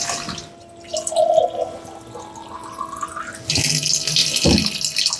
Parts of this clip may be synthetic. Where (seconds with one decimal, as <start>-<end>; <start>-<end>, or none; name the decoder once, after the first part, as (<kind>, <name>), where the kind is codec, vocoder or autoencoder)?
none

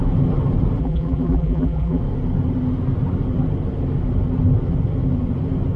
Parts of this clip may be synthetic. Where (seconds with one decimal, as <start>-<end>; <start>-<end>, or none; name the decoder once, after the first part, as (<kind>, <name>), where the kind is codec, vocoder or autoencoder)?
0.8-2.0 (vocoder, BigVGAN v2)